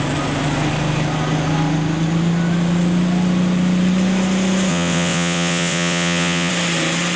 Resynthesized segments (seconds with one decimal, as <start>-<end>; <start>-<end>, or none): 4.7-6.5